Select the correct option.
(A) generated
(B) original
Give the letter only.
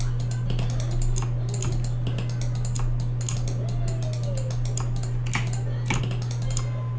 B